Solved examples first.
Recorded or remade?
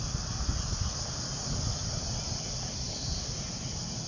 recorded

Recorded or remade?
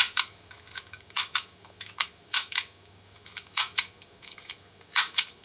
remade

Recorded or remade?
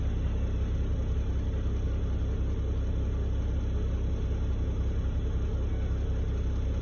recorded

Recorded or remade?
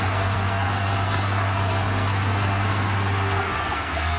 remade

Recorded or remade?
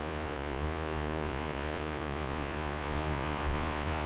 remade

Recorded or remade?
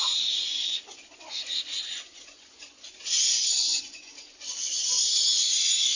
remade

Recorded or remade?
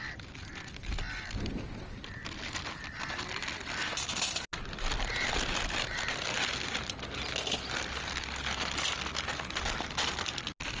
recorded